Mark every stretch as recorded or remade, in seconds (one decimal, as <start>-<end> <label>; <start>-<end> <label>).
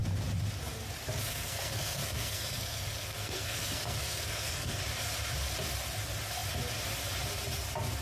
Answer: 0.0-1.3 recorded; 1.3-4.8 remade; 4.8-8.0 recorded